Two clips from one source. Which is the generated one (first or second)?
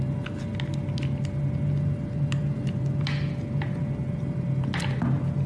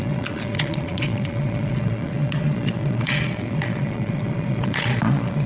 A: second